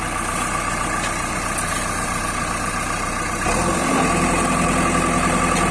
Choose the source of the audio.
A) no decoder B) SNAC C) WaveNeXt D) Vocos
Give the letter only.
A